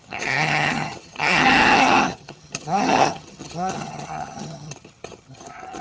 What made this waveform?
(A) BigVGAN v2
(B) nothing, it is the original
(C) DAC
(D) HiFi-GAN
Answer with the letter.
D